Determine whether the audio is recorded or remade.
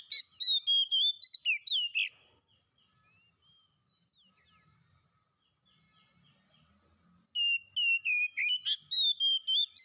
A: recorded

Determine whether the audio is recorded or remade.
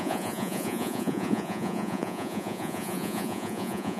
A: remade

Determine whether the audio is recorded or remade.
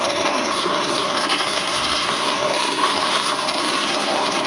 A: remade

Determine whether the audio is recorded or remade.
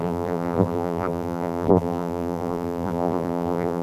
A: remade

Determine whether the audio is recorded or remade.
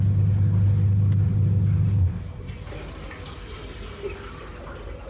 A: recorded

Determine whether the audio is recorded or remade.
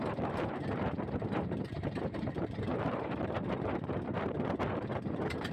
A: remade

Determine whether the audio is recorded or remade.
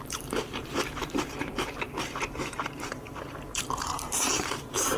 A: remade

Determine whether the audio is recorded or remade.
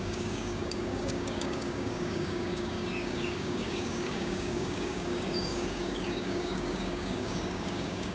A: remade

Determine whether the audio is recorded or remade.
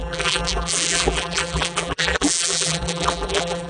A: remade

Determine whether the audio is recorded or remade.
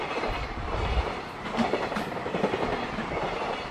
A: remade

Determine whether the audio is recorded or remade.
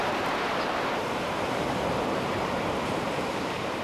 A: remade